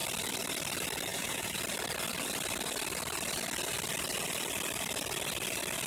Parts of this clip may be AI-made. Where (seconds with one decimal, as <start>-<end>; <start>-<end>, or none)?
1.1-1.6